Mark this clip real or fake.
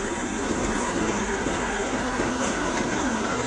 fake